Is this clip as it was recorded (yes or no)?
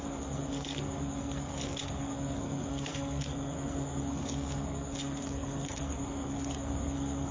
no